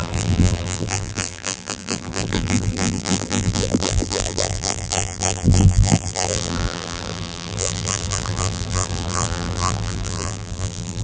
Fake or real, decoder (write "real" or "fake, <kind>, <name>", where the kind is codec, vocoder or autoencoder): fake, vocoder, BigVGAN v2